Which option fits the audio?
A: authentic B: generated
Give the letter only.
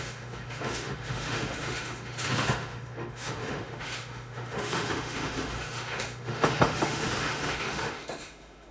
B